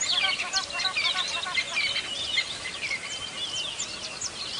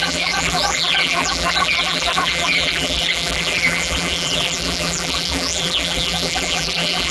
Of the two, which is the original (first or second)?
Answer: first